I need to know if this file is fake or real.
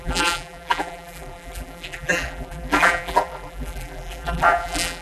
fake